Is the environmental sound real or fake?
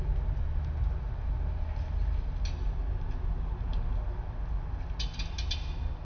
real